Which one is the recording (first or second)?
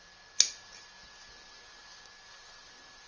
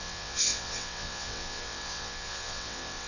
first